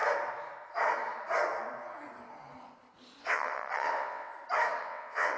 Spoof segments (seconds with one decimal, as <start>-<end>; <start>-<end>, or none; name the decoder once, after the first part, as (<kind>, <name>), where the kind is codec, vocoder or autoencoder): 3.2-4.3 (vocoder, WaveNeXt); 4.8-5.4